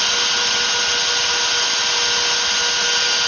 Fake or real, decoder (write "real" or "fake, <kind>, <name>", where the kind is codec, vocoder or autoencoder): real